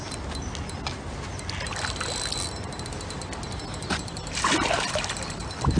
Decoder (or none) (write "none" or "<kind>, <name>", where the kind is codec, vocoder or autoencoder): none